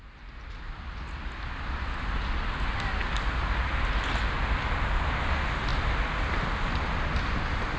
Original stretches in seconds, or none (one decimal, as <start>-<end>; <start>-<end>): 0.0-7.8